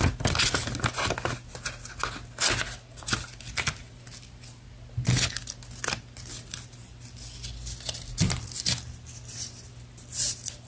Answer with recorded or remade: recorded